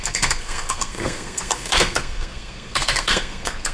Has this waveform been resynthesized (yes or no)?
yes